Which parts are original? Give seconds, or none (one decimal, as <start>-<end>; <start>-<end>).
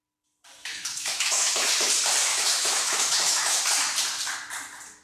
0.0-0.6; 1.7-2.3; 3.6-5.0